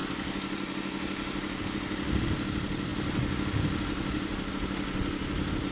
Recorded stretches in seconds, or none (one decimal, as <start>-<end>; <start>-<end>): 0.0-5.7